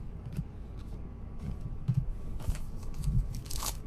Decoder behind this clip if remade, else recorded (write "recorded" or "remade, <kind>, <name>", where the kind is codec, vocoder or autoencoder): remade, codec, DAC